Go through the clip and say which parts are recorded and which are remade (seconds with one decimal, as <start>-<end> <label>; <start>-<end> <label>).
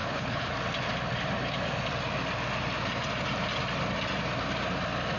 0.0-0.5 remade; 0.5-5.2 recorded